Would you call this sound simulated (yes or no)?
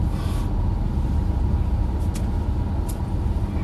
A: no